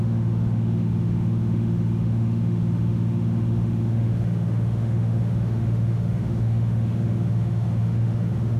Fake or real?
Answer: fake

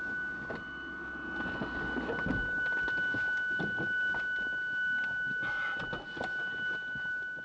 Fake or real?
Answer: real